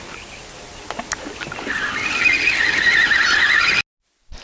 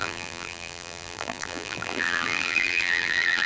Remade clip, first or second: second